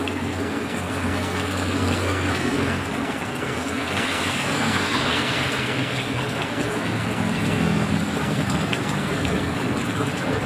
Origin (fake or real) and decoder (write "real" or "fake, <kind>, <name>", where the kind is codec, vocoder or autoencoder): fake, codec, SNAC